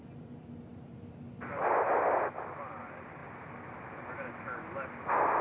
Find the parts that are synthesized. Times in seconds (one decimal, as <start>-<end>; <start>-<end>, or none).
none

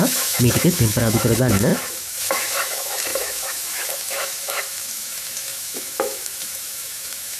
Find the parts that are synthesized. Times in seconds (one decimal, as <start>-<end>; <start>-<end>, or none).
0.0-7.4

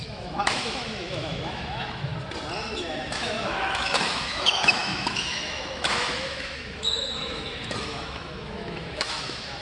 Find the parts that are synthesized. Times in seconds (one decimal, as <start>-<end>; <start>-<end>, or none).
0.0-2.1; 2.6-9.6